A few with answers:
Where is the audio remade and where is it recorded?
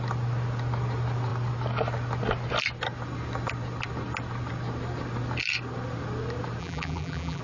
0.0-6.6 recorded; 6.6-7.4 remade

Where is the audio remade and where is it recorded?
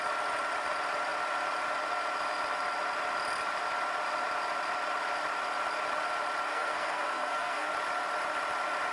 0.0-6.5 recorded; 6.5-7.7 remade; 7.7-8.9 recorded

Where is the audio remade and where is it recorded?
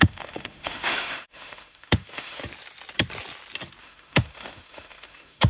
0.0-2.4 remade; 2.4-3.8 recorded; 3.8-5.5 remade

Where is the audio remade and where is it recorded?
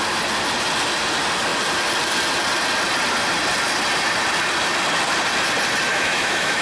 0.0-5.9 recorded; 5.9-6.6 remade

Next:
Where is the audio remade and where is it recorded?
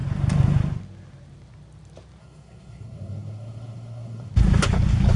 0.0-2.2 recorded; 2.2-4.3 remade; 4.3-5.2 recorded